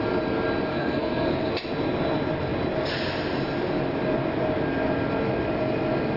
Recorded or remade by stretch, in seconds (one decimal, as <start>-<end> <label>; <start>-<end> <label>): 0.0-0.7 recorded; 0.7-1.5 remade; 1.5-6.2 recorded